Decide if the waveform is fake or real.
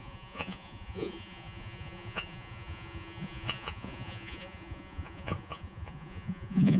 fake